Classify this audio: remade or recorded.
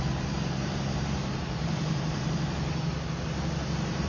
remade